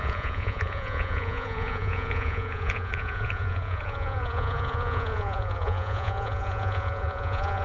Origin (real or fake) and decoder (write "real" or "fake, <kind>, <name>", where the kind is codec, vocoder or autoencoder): fake, vocoder, Vocos